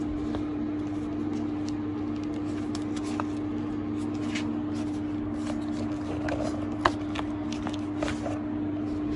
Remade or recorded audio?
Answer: recorded